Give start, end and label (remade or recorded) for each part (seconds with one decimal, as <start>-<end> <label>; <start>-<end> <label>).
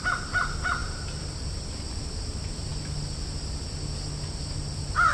0.0-5.1 recorded